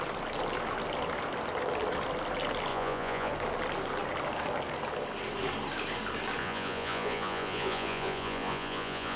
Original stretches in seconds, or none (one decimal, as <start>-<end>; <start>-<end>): 0.0-2.7; 3.3-6.4

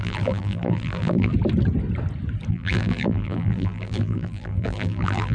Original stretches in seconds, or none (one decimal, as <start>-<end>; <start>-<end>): 1.3-2.5

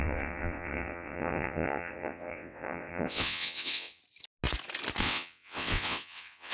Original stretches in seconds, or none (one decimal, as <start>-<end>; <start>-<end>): 4.0-5.0

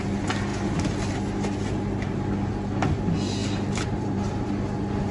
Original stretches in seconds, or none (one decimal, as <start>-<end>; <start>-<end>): 0.0-3.4; 4.5-5.1

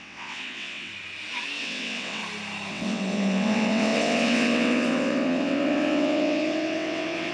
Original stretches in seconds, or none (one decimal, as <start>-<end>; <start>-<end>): 0.9-1.6; 2.2-2.7

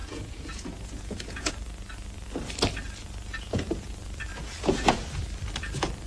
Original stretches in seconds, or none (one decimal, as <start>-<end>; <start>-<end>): 1.5-3.3; 3.9-4.3; 5.0-6.1

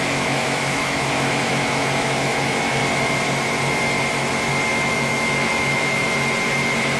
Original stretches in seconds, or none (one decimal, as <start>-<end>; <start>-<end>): 2.8-4.9; 6.0-7.0